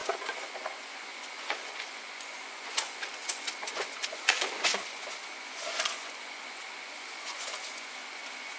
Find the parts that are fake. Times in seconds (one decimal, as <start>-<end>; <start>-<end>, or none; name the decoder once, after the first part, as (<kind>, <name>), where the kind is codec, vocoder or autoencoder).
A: 0.0-8.6 (vocoder, Vocos)